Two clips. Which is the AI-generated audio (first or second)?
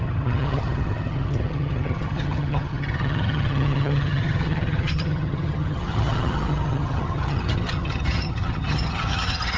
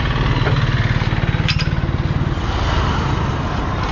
first